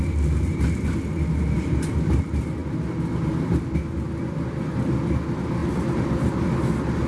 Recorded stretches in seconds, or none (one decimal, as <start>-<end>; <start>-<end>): 0.0-7.1